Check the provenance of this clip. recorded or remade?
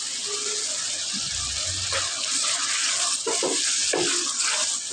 recorded